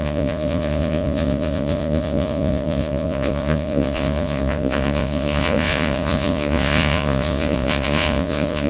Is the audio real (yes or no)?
no